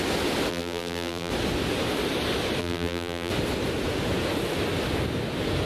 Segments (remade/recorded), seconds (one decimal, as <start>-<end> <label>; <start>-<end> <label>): 0.0-0.5 recorded; 0.5-1.3 remade; 1.3-2.6 recorded; 2.6-3.3 remade; 3.3-5.7 recorded